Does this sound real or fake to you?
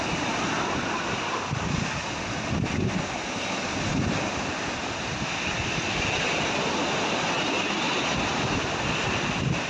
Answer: real